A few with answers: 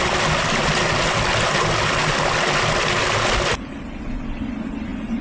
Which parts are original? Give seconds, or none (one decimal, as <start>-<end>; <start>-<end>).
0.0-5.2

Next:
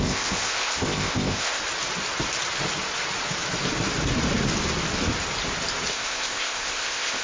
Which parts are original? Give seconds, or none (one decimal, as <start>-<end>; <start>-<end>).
1.6-5.9

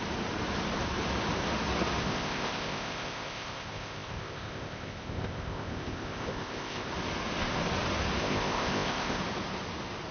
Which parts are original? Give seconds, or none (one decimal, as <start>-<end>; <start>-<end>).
0.0-2.0; 6.9-8.2; 9.2-10.1

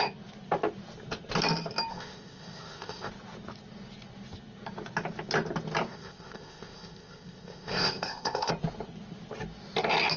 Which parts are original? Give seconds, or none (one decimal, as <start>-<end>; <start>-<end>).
0.0-1.9; 3.1-5.9; 8.5-10.2

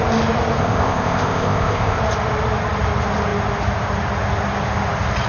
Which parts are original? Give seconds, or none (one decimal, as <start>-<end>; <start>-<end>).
0.0-0.6; 2.0-5.3

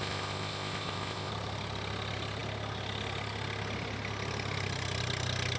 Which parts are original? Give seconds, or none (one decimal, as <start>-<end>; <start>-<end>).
1.3-5.6

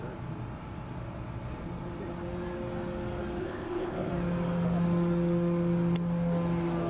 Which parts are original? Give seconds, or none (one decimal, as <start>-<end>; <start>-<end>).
0.0-3.4; 4.1-6.9